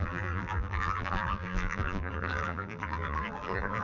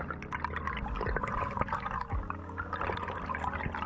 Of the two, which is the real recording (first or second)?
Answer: second